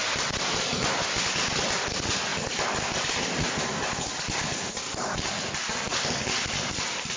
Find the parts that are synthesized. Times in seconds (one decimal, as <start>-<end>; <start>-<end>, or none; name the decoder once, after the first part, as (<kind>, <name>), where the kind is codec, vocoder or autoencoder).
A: none